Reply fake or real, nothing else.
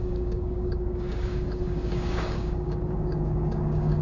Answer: fake